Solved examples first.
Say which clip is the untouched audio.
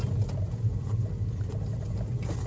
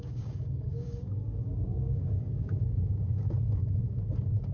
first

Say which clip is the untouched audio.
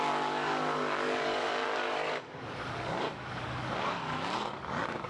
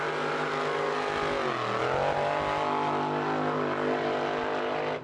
second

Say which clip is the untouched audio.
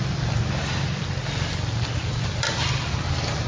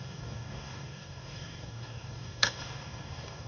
first